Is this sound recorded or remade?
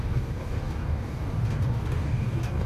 remade